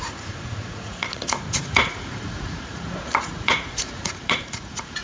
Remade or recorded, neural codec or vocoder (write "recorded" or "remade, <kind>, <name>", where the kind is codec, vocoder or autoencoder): remade, vocoder, Vocos